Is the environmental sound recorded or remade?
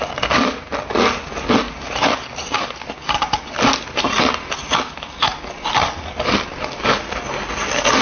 recorded